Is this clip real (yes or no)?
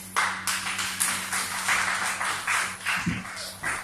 yes